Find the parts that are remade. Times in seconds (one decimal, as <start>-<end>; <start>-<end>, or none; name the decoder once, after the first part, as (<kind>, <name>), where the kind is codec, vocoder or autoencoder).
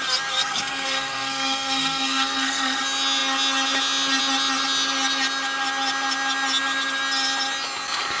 0.4-2.8 (codec, SNAC)